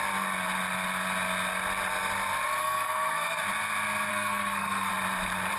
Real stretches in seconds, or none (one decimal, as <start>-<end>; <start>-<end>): 0.0-2.6; 3.4-4.1; 4.9-5.6